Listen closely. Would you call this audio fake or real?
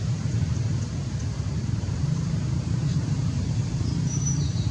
fake